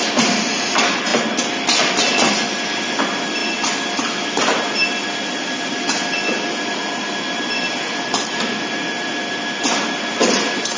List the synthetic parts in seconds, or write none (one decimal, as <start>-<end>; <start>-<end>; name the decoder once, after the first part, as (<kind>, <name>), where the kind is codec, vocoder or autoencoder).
none